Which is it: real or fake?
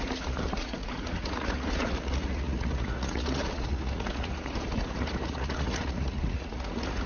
fake